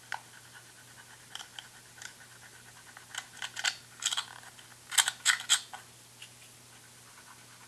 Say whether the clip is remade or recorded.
recorded